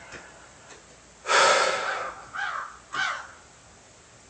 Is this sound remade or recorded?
recorded